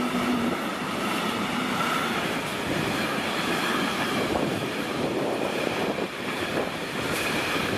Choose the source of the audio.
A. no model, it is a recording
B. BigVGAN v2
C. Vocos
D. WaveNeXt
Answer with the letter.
B